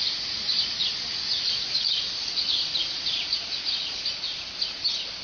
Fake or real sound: real